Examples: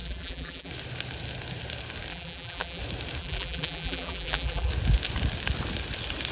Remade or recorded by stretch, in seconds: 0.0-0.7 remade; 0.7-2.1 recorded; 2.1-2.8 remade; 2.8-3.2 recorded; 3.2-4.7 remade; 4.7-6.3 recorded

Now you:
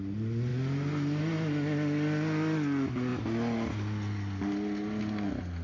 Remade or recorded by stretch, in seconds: 0.0-5.6 recorded

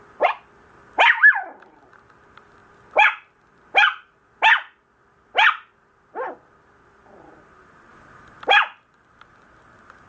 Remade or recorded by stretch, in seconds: 0.0-4.2 remade; 4.2-6.9 recorded; 6.9-10.1 remade

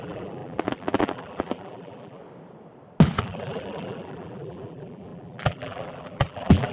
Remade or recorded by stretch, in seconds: 0.0-2.2 remade; 2.2-3.2 recorded; 3.2-6.7 remade

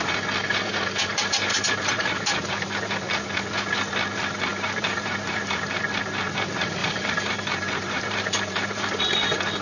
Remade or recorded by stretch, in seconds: 0.0-1.5 recorded; 1.5-2.9 remade; 2.9-4.5 recorded; 4.5-5.8 remade; 5.8-6.8 recorded; 6.8-9.0 remade; 9.0-9.6 recorded

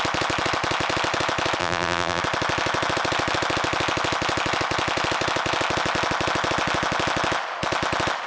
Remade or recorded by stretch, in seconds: 0.0-1.6 recorded; 1.6-2.2 remade; 2.2-8.3 recorded

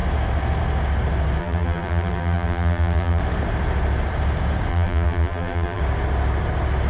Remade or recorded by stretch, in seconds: 0.0-1.4 recorded; 1.4-3.2 remade; 3.2-4.7 recorded; 4.7-5.8 remade; 5.8-6.9 recorded

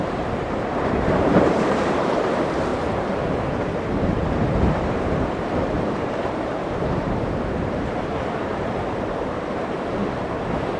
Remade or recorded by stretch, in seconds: 0.0-10.8 remade